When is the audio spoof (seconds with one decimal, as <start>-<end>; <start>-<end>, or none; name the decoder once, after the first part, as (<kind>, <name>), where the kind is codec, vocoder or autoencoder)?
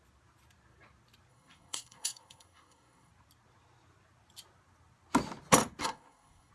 1.3-3.1 (codec, SNAC); 5.8-6.5